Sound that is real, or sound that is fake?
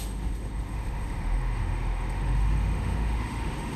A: fake